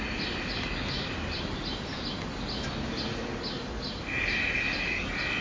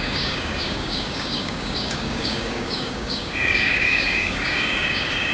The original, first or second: first